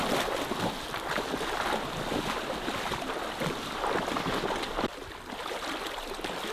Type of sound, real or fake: fake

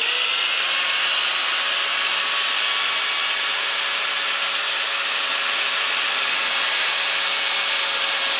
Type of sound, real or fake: real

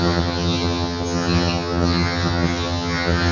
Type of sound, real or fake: fake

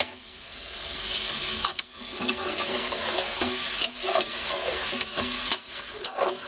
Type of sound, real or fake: fake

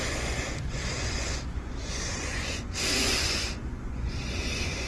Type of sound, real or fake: fake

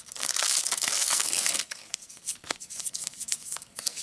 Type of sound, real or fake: fake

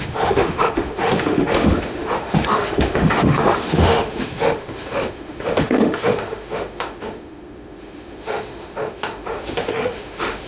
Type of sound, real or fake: fake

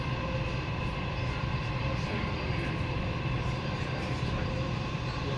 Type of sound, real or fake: fake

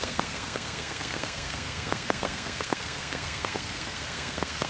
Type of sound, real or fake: fake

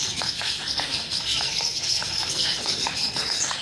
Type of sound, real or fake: fake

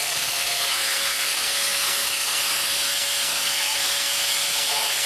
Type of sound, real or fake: fake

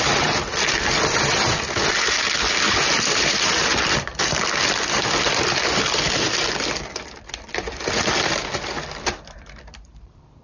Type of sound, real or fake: fake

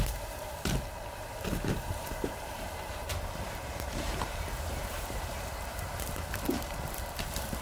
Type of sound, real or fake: fake